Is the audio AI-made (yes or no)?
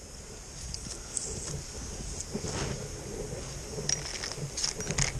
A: no